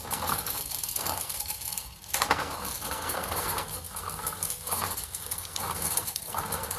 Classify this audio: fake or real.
fake